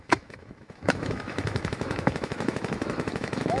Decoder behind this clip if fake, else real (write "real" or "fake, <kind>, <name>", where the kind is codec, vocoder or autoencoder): fake, autoencoder, DAC-VAE